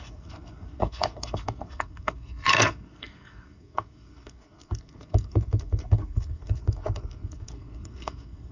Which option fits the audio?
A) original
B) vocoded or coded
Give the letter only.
B